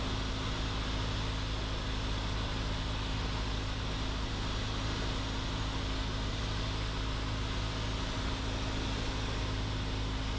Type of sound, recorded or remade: recorded